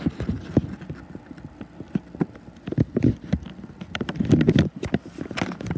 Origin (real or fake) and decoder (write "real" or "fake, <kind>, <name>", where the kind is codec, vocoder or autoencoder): real